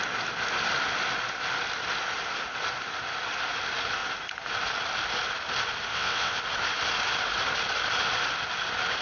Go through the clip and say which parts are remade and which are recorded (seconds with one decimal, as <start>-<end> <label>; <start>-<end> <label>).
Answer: 0.0-5.9 recorded; 5.9-6.4 remade; 6.4-9.0 recorded